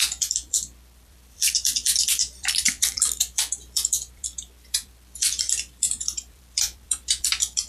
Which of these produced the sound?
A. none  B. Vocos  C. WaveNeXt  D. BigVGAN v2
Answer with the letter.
D